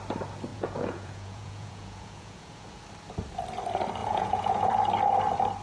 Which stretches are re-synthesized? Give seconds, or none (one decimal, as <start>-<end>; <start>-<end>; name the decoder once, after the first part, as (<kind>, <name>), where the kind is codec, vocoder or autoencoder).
0.5-2.8 (vocoder, Vocos); 4.0-4.7